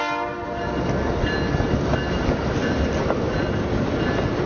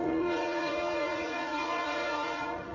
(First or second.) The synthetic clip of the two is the second